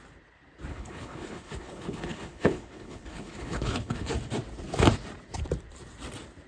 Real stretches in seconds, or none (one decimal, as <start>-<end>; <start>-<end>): 0.0-0.7; 4.1-6.5